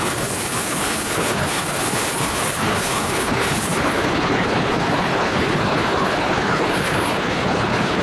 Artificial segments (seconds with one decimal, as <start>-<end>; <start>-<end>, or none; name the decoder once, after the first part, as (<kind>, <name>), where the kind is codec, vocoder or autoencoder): 0.0-8.0 (codec, HILCodec)